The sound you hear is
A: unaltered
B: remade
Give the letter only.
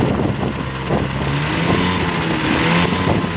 A